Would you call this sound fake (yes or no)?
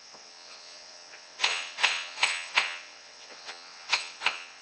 yes